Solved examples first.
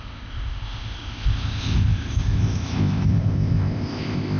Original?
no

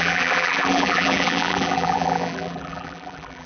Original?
no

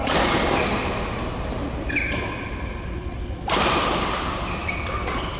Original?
yes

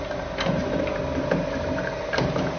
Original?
yes